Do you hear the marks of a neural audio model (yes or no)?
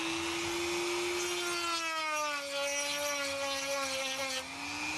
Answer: no